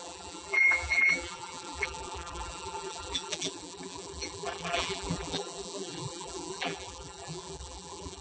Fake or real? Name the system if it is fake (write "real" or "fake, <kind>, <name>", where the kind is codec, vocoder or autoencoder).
fake, vocoder, BigVGAN v2